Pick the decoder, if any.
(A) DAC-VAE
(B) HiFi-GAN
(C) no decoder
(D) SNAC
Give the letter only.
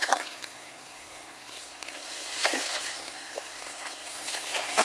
D